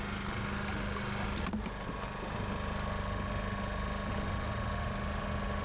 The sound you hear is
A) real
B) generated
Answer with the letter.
A